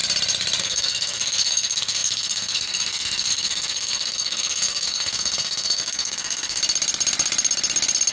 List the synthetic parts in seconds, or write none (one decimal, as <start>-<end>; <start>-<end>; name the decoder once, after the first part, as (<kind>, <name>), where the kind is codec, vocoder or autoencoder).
0.6-6.6 (codec, SNAC)